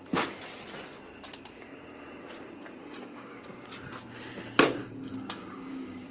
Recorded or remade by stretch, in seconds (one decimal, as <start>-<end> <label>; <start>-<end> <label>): 0.0-2.8 recorded; 2.8-3.4 remade; 3.4-4.8 recorded; 4.8-6.1 remade